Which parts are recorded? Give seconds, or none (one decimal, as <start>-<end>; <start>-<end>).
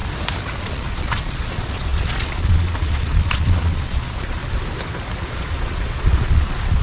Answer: 0.0-0.6; 4.4-5.2